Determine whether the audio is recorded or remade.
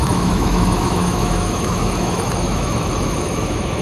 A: remade